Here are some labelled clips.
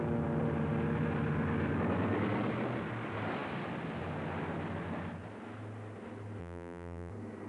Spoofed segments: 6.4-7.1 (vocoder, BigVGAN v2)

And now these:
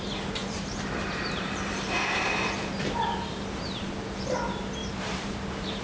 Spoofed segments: 0.4-3.3 (vocoder, BigVGAN v2); 4.8-5.8

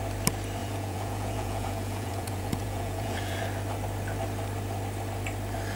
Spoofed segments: 0.6-3.4 (vocoder, Vocos)

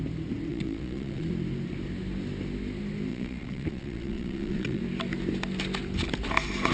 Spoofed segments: 0.5-1.3 (vocoder, Vocos); 3.1-4.8

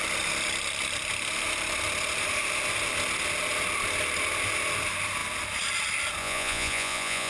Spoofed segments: 6.2-7.3 (vocoder, Vocos)

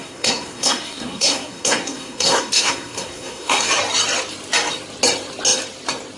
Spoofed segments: 0.0-3.7 (codec, SNAC)

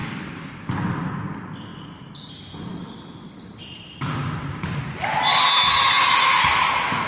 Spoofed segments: 0.0-0.6 (vocoder, BigVGAN v2)